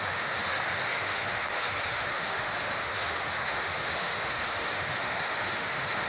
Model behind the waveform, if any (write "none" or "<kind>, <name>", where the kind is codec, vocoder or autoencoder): autoencoder, DAC-VAE